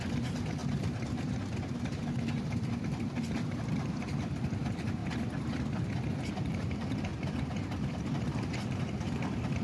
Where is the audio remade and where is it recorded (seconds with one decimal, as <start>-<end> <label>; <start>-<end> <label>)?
0.0-5.0 remade; 5.0-6.3 recorded; 6.3-7.1 remade; 7.1-7.9 recorded; 7.9-9.6 remade